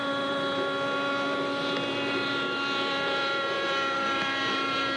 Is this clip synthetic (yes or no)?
no